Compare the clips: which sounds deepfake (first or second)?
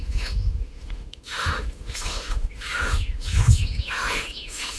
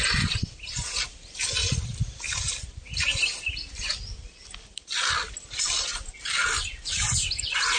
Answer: first